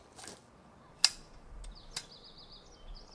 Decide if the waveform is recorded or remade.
recorded